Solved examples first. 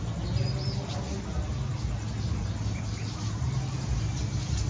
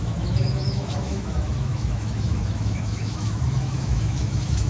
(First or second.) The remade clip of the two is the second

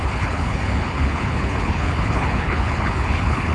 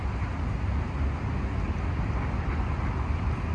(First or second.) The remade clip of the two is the first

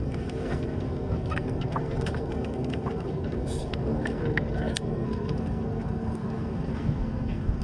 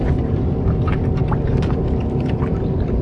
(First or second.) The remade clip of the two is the first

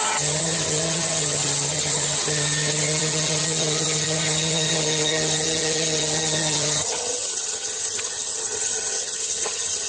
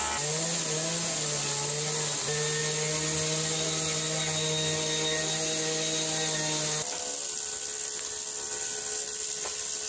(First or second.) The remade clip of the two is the first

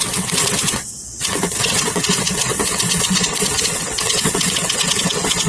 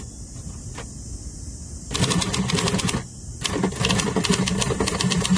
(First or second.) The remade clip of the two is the first